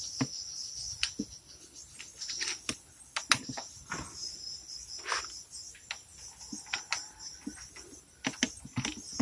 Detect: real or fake real